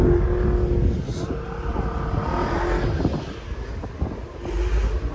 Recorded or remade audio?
recorded